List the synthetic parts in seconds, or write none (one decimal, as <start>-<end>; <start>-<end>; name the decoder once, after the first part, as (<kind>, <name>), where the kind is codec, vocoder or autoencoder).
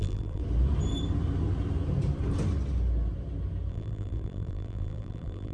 0.0-0.4 (vocoder, BigVGAN v2); 3.7-5.5